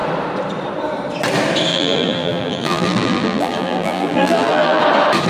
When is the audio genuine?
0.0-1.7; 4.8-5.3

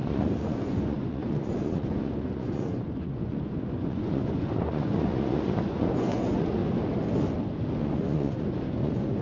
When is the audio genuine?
6.6-7.8

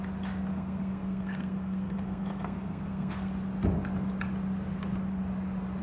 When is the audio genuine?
0.0-0.5; 3.3-5.8

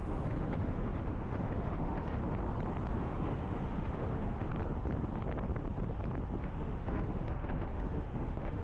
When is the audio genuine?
2.2-2.9; 4.5-6.4

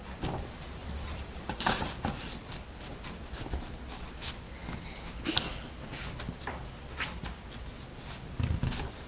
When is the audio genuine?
0.0-0.8; 2.6-3.2; 3.8-7.9

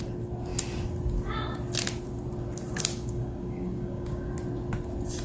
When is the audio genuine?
0.0-2.9; 4.3-5.2

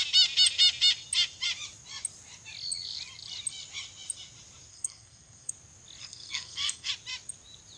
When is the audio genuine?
0.0-4.7; 5.5-6.0; 6.9-7.8